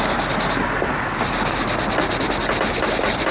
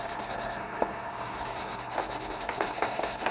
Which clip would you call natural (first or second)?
first